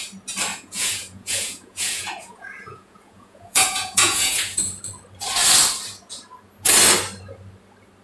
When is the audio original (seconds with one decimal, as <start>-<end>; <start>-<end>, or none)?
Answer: 0.0-0.5; 4.8-8.0